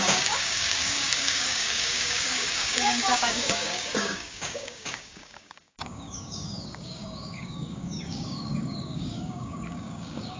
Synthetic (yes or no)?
yes